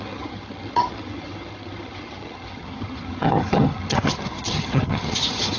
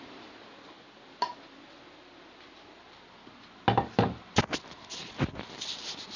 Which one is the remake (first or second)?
first